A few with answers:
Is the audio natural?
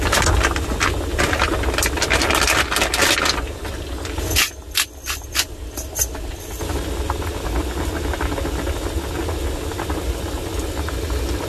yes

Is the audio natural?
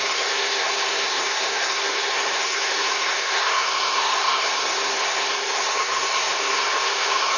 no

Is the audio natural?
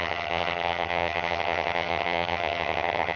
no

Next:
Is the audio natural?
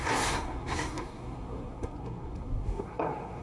no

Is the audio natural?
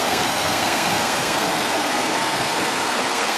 no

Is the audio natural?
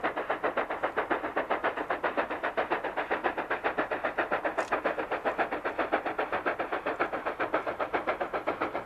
yes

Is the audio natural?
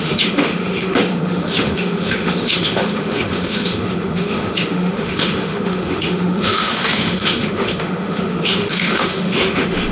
no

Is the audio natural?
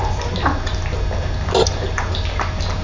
yes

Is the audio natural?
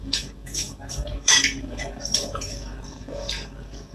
no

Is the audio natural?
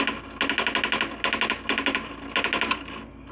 yes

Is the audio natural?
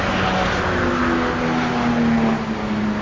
yes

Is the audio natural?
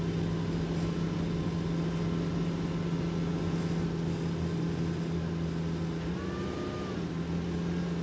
yes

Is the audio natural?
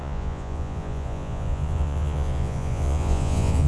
no